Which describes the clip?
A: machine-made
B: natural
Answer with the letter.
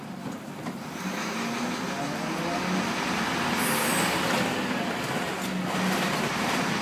B